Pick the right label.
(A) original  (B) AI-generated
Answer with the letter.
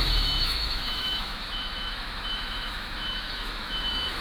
B